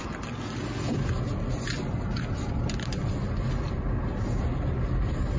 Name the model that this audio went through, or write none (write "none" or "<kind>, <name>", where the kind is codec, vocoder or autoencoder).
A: none